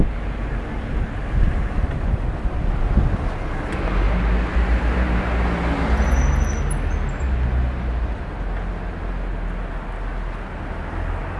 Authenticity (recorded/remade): recorded